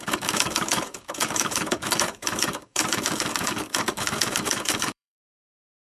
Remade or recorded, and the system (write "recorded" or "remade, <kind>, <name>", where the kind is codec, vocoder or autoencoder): remade, codec, DAC